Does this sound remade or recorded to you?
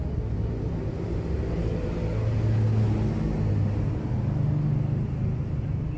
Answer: recorded